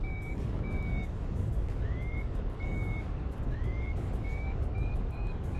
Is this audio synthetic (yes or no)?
yes